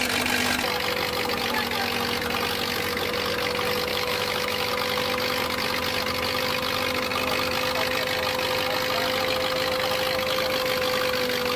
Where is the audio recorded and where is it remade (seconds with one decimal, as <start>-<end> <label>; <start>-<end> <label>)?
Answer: 0.0-3.9 recorded; 3.9-4.7 remade; 4.7-11.6 recorded